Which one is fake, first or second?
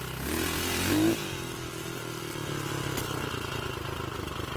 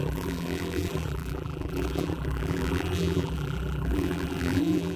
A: second